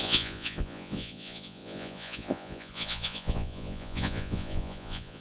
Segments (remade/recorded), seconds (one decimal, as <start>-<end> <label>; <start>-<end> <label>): 0.0-5.2 remade